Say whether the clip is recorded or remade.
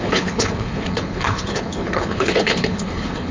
remade